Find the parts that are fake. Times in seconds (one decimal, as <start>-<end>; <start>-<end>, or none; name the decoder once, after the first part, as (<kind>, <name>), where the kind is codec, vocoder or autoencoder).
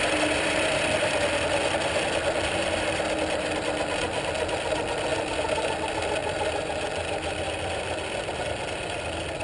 none